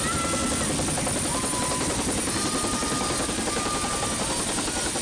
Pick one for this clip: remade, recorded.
recorded